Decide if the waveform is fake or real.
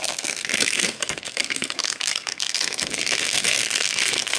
fake